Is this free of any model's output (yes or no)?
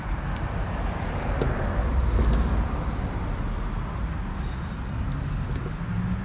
yes